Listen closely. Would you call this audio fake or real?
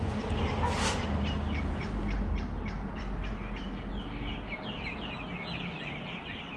real